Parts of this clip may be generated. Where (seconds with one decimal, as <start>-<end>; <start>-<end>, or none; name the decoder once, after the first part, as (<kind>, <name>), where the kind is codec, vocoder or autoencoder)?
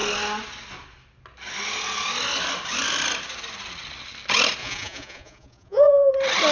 4.6-6.1 (vocoder, Vocos)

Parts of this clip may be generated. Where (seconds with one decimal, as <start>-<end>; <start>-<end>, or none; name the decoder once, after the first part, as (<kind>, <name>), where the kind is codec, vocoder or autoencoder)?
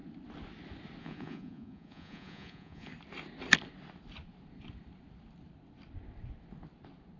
1.0-2.9 (vocoder, Vocos)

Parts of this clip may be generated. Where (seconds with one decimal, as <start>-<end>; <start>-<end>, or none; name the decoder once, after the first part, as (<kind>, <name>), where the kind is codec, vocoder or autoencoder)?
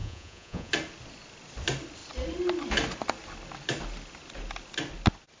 0.0-0.7 (vocoder, Vocos)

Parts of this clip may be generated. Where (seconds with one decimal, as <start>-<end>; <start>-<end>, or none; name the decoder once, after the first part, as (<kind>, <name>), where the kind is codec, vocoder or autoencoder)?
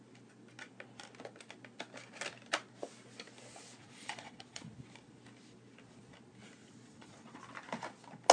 3.8-4.7 (vocoder, Vocos); 6.6-7.4